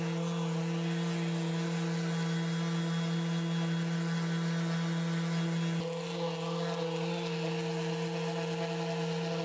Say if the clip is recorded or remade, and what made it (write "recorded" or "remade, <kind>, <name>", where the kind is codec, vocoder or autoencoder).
recorded